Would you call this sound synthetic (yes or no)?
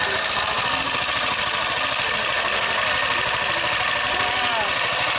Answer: no